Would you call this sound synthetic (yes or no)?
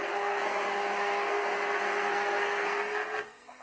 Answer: yes